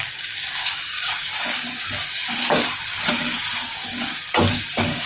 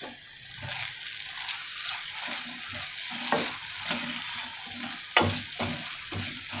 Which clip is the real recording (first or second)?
second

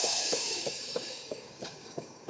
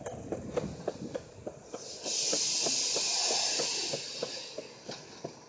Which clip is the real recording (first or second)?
second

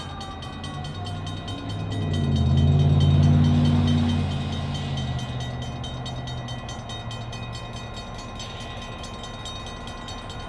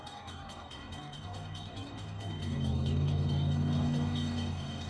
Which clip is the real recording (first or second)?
first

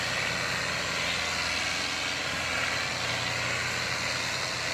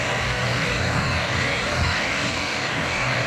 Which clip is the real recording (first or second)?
first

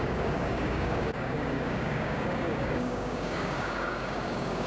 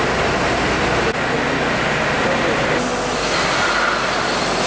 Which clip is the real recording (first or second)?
second